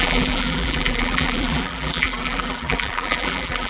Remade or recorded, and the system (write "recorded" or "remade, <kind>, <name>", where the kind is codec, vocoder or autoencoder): remade, vocoder, BigVGAN v2